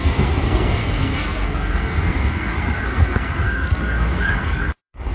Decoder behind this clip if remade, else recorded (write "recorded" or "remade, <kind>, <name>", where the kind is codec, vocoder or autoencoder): remade, codec, SNAC